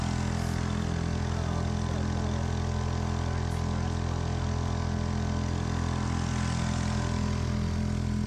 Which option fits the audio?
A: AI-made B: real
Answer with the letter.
B